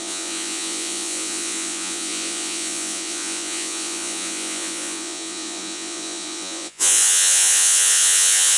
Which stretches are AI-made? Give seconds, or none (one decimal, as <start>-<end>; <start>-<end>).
0.0-8.6